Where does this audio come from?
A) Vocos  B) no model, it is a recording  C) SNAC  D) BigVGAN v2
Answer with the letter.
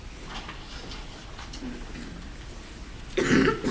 B